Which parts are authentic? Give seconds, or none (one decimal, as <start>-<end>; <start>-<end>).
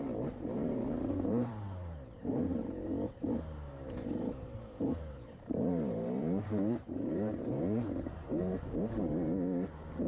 9.1-10.1